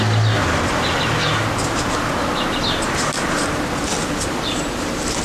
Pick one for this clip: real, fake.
real